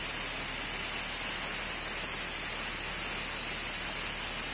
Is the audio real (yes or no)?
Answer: yes